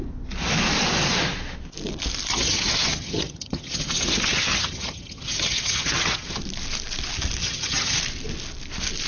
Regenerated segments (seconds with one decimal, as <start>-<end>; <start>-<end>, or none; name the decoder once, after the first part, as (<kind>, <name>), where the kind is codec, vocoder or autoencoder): 2.3-6.4 (vocoder, HiFi-GAN); 7.4-8.0